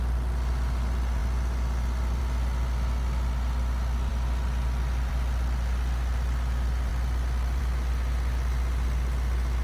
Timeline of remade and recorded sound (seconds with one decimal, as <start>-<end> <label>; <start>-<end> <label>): 0.0-9.6 recorded